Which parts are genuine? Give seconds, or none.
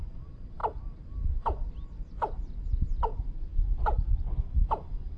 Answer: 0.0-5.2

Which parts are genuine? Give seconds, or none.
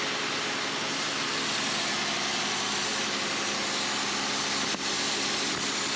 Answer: 0.0-6.0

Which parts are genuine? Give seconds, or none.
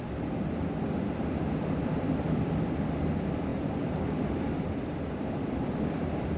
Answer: 0.0-3.5; 4.0-6.4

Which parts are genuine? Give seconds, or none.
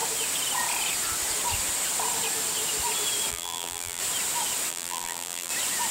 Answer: 0.0-3.3; 4.0-4.7; 5.5-5.9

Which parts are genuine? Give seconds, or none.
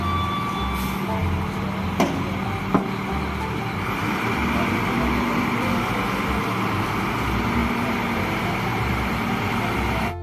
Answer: 0.0-7.6; 8.2-8.7; 9.2-10.2